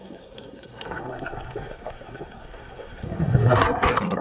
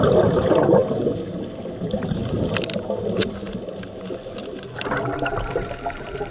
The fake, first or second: first